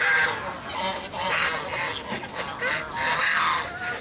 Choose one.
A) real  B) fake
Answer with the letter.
A